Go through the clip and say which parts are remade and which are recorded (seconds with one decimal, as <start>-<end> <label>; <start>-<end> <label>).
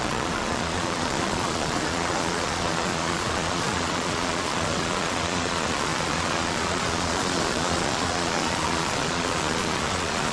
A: 0.0-10.3 remade